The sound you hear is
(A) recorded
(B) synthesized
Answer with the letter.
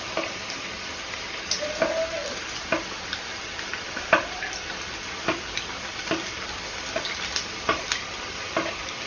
B